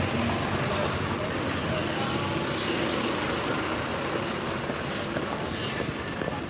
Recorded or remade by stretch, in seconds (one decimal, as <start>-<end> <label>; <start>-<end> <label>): 0.0-6.5 recorded